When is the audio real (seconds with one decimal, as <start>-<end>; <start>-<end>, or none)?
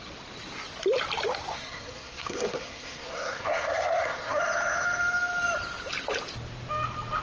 0.0-1.5; 4.4-7.2